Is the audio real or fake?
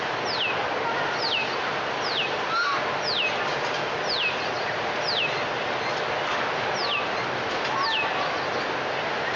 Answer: real